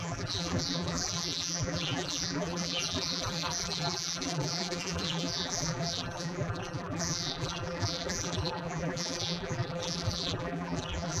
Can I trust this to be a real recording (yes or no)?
no